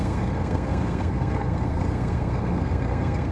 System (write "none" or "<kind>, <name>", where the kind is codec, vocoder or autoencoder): codec, SNAC